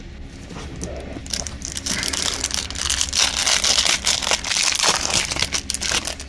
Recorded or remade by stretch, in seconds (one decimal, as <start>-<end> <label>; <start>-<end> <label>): 0.0-1.2 recorded; 1.2-2.5 remade; 2.5-6.3 recorded